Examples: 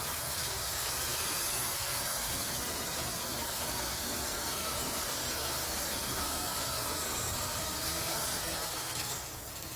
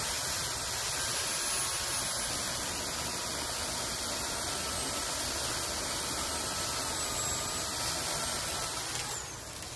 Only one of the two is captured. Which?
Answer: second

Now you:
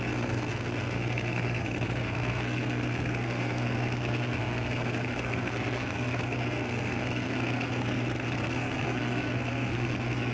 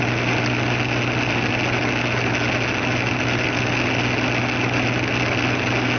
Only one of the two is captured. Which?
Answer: second